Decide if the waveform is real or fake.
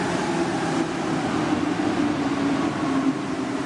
real